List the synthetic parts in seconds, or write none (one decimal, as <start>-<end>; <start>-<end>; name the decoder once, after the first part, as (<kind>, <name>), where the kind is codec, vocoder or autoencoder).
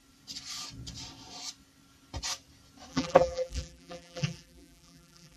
2.9-5.4 (vocoder, BigVGAN v2)